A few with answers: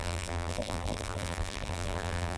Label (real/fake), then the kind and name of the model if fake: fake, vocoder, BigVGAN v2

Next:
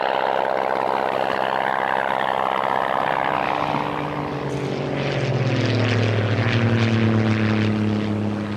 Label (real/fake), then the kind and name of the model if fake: real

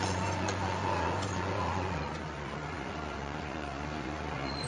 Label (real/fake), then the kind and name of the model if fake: fake, vocoder, Vocos